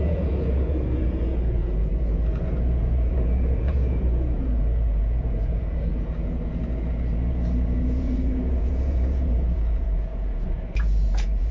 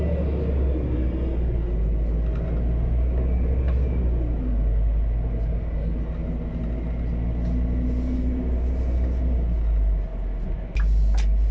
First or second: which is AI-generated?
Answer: first